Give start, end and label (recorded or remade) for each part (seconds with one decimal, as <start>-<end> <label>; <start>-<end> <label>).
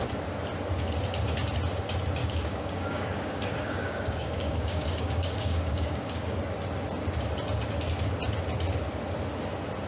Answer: 0.0-2.2 recorded; 2.2-6.4 remade; 6.4-9.9 recorded